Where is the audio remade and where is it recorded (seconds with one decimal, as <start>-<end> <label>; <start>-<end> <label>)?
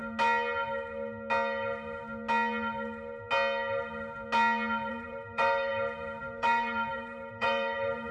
0.0-4.9 recorded; 4.9-5.7 remade; 5.7-6.2 recorded; 6.2-8.1 remade